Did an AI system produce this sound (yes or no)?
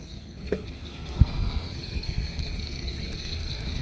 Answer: yes